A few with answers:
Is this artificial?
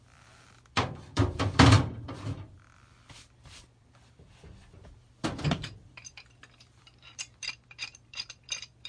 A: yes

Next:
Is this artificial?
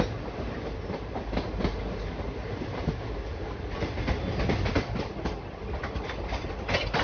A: no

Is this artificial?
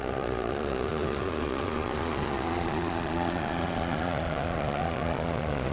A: yes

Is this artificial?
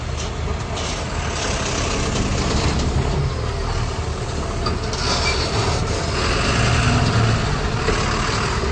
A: no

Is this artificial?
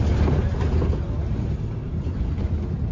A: no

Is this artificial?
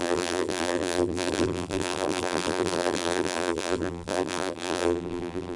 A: yes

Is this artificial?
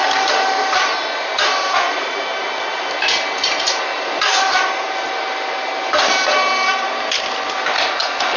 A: no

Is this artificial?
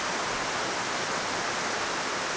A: no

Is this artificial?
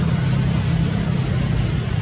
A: no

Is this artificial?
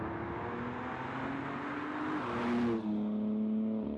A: no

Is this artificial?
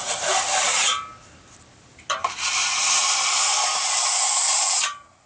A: yes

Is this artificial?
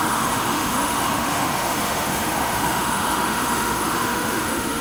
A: yes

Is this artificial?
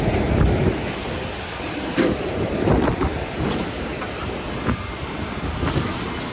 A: no